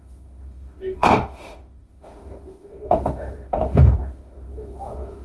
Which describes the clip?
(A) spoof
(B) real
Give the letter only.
A